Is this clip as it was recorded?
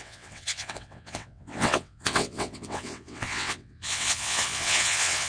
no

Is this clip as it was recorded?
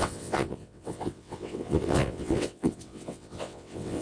no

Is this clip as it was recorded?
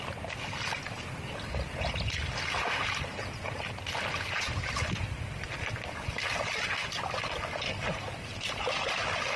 yes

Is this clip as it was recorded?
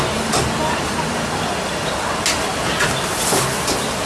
yes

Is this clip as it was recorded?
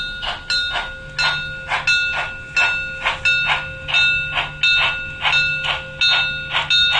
yes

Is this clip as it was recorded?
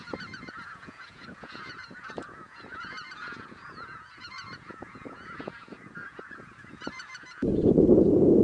no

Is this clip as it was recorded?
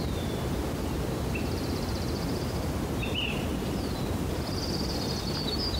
yes